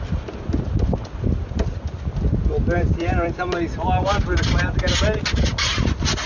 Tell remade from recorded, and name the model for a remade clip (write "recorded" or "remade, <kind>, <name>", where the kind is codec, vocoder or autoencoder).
recorded